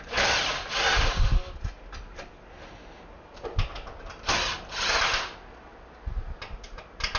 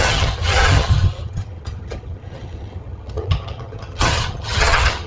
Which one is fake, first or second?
second